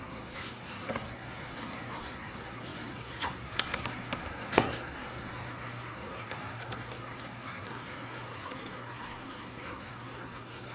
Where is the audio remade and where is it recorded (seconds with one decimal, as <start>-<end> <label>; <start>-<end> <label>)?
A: 0.0-10.7 remade